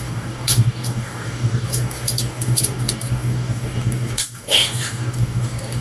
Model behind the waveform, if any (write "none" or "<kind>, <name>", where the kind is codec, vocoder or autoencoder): codec, DAC